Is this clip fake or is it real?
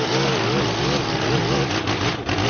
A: real